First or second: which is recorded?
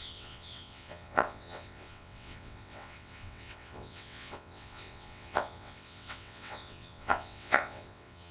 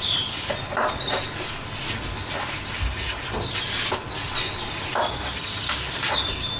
second